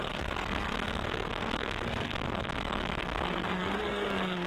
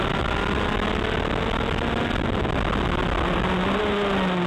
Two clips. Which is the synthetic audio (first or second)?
first